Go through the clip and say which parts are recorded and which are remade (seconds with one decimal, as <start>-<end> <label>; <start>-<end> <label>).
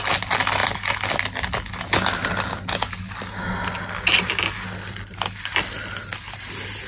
0.0-6.9 recorded